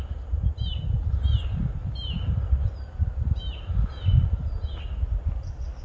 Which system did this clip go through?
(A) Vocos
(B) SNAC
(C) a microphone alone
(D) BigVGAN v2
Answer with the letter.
C